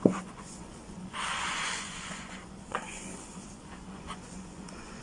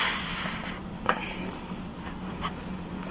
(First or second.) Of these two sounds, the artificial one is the first